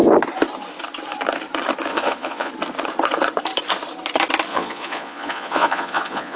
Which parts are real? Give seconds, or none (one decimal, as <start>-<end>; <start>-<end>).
0.0-1.9; 2.5-4.5